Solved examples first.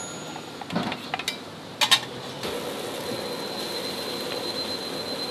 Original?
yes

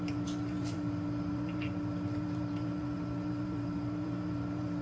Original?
no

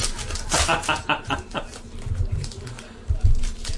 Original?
no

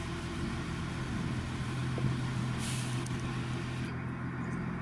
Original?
yes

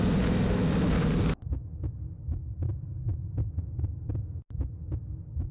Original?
yes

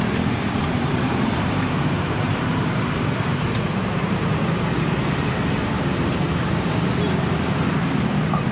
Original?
no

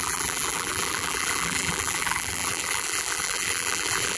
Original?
no